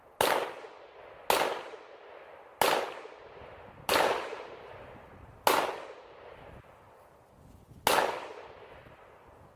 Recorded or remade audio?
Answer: recorded